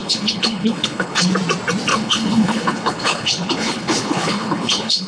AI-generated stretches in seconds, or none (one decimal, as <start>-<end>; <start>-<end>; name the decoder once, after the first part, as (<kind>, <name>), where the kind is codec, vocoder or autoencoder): 0.0-1.3 (codec, HILCodec); 1.9-5.1